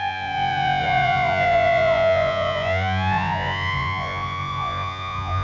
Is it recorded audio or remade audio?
remade